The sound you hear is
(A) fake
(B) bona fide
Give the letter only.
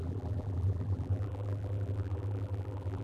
A